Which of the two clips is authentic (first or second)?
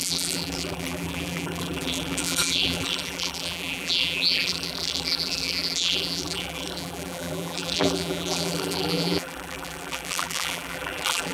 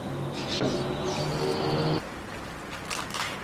second